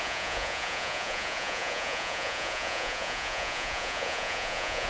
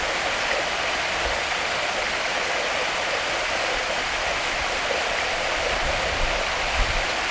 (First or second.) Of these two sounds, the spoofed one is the first